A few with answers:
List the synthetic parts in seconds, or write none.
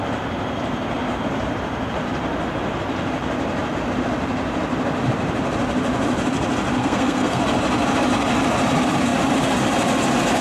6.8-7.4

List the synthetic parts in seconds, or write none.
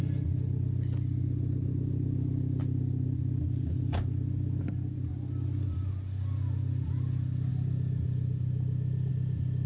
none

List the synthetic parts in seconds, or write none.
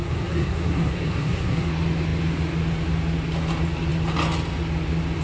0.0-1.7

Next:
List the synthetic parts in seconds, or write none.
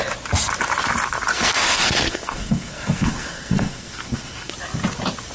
1.3-4.5